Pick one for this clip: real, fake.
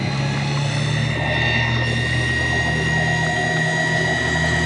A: real